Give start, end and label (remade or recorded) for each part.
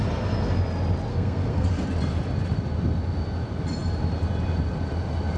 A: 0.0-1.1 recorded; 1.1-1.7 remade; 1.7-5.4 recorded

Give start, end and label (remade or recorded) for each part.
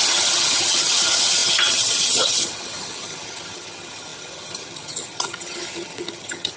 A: 0.0-6.6 remade